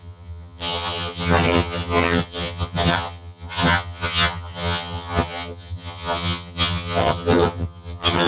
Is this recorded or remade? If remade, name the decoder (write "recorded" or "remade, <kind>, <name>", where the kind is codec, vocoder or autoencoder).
remade, vocoder, HiFi-GAN